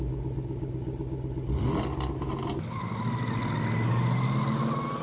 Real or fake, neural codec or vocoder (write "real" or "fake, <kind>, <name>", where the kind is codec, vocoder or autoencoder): real